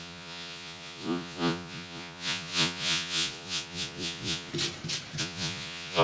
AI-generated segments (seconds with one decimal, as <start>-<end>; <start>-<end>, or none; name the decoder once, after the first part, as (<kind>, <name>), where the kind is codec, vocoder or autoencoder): 0.0-4.5 (vocoder, Vocos); 5.2-6.0